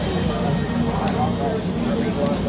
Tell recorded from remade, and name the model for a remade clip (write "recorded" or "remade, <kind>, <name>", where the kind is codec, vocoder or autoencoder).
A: recorded